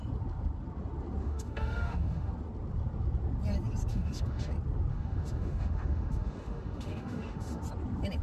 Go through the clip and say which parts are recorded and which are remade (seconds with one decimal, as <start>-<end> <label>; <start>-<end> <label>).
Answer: 0.0-1.2 recorded; 1.2-2.3 remade; 2.3-3.9 recorded; 3.9-4.5 remade; 4.5-4.9 recorded; 4.9-7.6 remade; 7.6-8.2 recorded